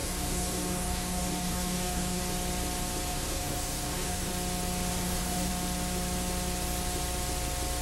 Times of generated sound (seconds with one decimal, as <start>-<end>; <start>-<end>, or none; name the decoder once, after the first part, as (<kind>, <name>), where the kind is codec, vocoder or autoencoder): 0.0-2.2 (codec, DAC); 3.1-4.3; 4.9-5.5